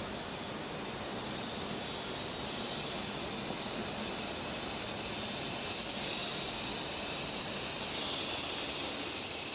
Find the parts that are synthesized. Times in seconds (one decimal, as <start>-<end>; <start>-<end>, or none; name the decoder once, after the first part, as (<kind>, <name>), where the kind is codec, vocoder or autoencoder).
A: 6.2-7.9 (vocoder, BigVGAN v2)